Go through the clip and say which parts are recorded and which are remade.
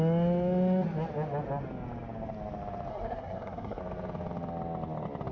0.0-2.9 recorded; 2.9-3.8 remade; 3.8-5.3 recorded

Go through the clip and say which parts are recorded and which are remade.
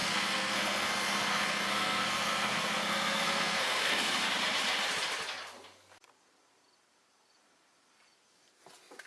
0.0-4.1 remade; 4.1-9.1 recorded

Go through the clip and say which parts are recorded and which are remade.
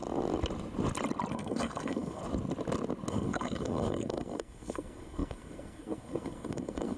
0.0-1.3 recorded; 1.3-2.2 remade; 2.2-3.1 recorded; 3.1-7.0 remade